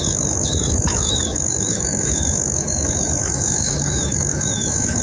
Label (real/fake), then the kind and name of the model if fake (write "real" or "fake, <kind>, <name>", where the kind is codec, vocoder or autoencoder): fake, autoencoder, DAC-VAE